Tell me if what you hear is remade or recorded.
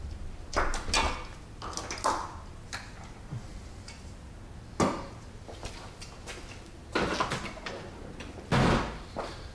recorded